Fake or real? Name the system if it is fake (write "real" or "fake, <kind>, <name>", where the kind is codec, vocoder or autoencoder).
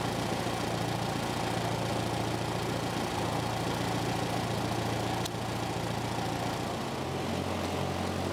real